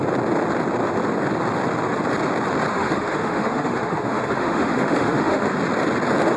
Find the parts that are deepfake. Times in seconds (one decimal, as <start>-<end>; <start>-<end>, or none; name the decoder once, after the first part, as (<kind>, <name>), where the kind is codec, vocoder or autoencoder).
2.7-5.5 (autoencoder, DAC-VAE)

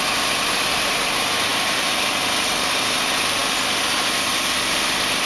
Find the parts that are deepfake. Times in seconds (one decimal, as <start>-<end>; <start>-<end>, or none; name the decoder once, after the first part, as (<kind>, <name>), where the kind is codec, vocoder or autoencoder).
none

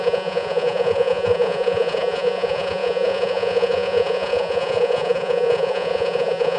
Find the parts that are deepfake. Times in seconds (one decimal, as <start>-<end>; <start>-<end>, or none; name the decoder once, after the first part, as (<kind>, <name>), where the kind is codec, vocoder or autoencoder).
0.0-6.6 (vocoder, Vocos)

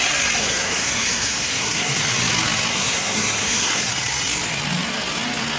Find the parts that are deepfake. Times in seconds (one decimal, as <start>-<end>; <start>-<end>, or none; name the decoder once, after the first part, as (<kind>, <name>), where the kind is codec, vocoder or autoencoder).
0.4-2.0 (codec, SNAC); 2.7-3.9

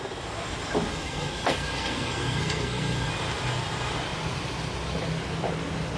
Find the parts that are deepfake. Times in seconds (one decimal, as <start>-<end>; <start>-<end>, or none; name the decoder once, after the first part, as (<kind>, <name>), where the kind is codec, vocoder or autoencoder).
0.9-3.1 (codec, SNAC)

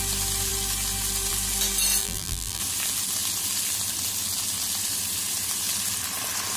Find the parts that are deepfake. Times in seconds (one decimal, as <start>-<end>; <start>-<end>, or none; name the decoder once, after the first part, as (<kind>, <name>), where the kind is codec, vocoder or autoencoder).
2.0-2.6 (vocoder, BigVGAN v2)